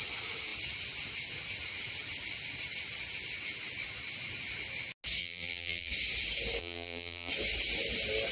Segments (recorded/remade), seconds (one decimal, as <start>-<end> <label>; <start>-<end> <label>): 0.0-5.2 recorded; 5.2-5.9 remade; 5.9-6.6 recorded; 6.6-7.3 remade; 7.3-8.3 recorded